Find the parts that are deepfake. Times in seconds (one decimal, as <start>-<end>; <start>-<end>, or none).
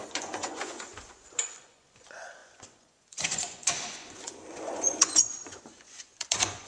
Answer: 0.0-6.7